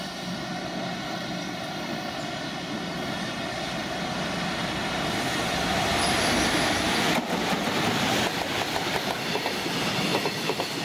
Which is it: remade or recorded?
recorded